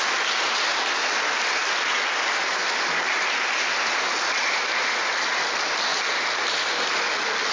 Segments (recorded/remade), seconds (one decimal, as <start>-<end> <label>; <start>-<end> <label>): 0.0-7.5 recorded

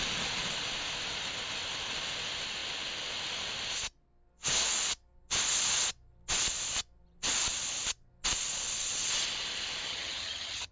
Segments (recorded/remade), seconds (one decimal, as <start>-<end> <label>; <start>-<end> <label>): 0.0-9.9 recorded; 9.9-10.7 remade

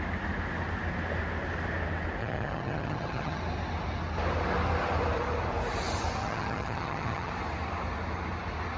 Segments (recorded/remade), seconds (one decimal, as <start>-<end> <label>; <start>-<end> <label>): 0.0-2.2 recorded; 2.2-3.4 remade; 3.4-6.2 recorded; 6.2-7.3 remade; 7.3-8.8 recorded

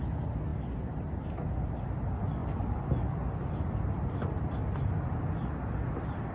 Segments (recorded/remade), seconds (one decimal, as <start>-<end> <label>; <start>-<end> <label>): 0.0-6.3 recorded